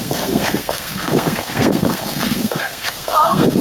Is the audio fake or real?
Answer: fake